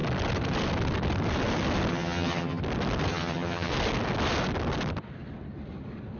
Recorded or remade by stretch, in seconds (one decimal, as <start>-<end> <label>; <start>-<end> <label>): 0.0-1.9 recorded; 1.9-2.6 remade; 2.6-3.1 recorded; 3.1-3.7 remade; 3.7-6.2 recorded